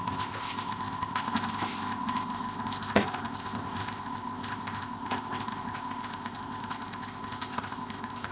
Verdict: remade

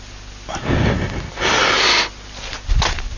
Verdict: recorded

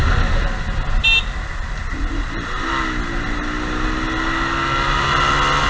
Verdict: recorded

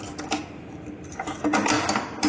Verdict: recorded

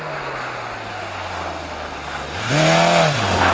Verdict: recorded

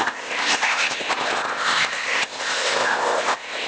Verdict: remade